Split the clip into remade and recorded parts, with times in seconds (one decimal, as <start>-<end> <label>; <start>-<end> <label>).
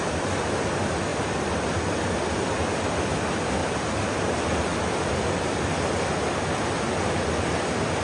0.0-1.1 recorded; 1.1-1.6 remade; 1.6-8.0 recorded